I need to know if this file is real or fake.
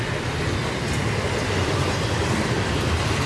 real